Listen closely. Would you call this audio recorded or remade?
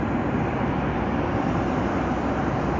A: recorded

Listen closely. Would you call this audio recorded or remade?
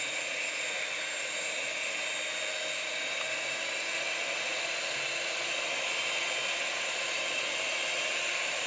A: recorded